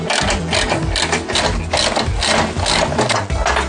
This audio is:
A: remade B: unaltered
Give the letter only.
B